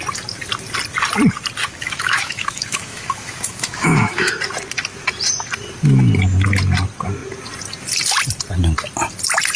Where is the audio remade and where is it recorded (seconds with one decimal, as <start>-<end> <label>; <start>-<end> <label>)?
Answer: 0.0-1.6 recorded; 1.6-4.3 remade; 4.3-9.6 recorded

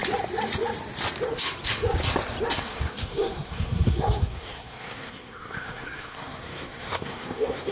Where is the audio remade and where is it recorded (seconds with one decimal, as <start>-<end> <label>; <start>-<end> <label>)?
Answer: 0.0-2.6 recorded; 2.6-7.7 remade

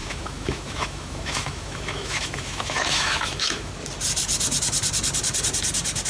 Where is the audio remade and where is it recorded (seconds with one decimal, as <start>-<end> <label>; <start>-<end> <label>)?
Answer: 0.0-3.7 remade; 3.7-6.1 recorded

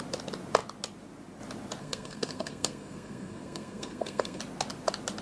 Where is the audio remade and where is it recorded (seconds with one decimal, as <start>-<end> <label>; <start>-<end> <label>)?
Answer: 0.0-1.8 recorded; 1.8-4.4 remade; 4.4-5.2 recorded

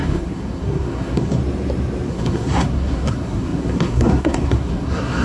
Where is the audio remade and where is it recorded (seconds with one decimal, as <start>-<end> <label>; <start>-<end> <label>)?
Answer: 0.0-1.4 remade; 1.4-2.1 recorded; 2.1-5.2 remade

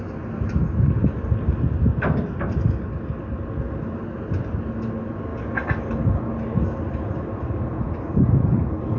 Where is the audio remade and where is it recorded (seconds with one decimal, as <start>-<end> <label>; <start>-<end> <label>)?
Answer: 0.0-9.0 recorded